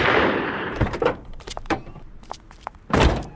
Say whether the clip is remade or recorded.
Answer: remade